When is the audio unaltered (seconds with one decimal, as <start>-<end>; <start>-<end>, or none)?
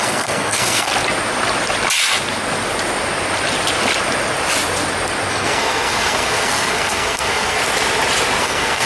0.9-5.3; 7.6-8.4